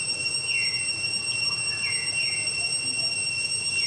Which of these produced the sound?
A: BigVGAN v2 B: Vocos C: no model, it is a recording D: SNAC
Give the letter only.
C